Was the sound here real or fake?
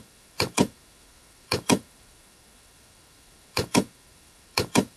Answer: fake